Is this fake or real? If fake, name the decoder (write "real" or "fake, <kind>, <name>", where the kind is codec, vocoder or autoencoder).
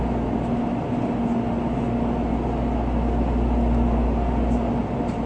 real